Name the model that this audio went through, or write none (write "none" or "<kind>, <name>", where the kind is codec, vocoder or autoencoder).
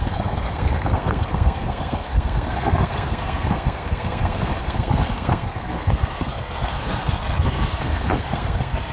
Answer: codec, SNAC